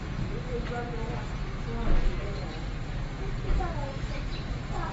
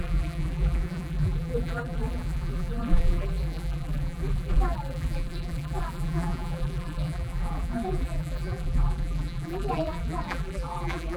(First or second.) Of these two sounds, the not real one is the second